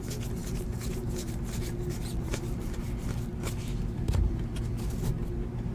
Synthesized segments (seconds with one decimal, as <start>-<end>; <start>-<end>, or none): none